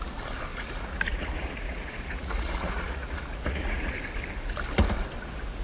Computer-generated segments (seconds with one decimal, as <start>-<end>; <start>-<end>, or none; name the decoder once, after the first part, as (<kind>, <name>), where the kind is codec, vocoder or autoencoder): 0.5-3.9 (vocoder, Vocos)